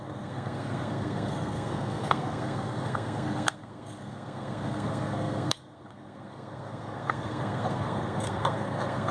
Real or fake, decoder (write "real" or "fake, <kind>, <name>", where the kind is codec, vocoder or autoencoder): fake, codec, SNAC